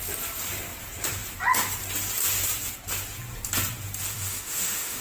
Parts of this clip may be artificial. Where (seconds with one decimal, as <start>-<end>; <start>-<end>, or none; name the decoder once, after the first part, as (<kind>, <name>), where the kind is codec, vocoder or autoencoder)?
4.1-5.0 (autoencoder, DAC-VAE)